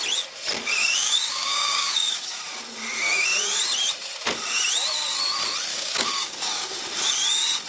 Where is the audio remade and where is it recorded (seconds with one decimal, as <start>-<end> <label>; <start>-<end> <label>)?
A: 0.0-0.8 recorded; 0.8-2.4 remade; 2.4-5.7 recorded; 5.7-6.8 remade; 6.8-7.7 recorded